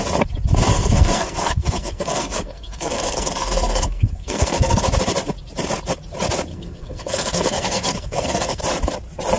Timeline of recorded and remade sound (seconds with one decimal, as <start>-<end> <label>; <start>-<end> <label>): 0.0-0.7 recorded; 0.7-4.8 remade; 4.8-6.5 recorded; 6.5-8.6 remade; 8.6-9.4 recorded